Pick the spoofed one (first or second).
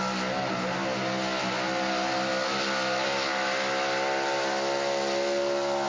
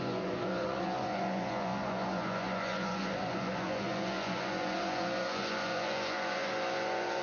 second